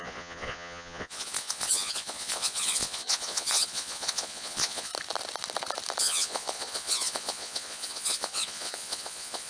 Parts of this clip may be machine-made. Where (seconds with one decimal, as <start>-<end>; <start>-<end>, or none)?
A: 0.0-4.9; 6.0-9.5

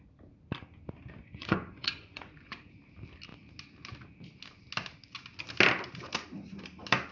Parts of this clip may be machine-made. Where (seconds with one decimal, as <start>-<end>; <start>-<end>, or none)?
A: 1.2-2.7